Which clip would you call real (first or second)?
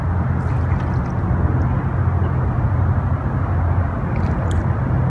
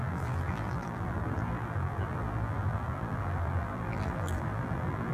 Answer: first